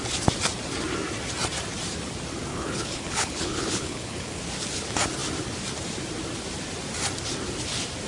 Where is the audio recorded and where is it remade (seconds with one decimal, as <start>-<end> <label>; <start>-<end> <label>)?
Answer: 0.0-2.5 recorded; 2.5-4.4 remade; 4.4-8.1 recorded